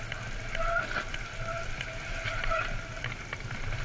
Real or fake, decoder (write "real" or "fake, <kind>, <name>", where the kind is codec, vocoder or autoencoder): real